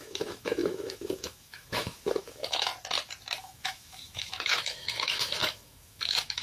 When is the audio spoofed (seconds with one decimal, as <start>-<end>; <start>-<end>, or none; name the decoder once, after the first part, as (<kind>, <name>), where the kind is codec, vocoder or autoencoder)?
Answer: 0.0-2.7 (autoencoder, DAC-VAE); 3.4-6.4